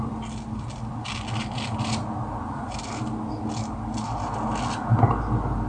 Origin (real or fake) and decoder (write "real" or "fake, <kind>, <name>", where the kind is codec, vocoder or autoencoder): real